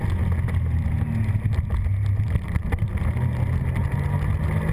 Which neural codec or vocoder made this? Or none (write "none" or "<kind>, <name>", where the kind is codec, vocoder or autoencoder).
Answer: none